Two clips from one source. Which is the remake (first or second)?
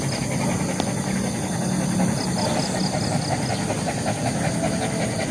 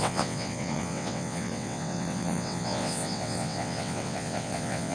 second